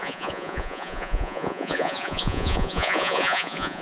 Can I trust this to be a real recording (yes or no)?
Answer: no